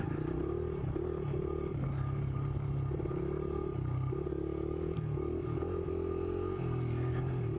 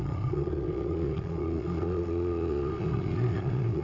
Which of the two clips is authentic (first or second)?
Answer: first